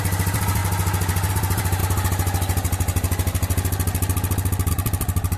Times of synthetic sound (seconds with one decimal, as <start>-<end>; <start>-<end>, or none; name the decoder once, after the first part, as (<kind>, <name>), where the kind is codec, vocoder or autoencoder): 0.0-0.6 (vocoder, BigVGAN v2); 1.3-1.8; 4.7-5.4